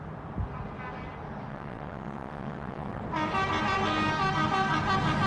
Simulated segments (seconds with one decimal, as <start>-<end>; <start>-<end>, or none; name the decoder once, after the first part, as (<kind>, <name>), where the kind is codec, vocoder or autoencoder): 1.5-3.0 (vocoder, WaveNeXt)